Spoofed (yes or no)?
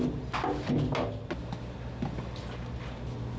no